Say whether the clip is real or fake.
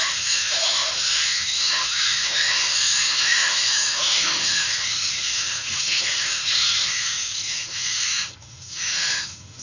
fake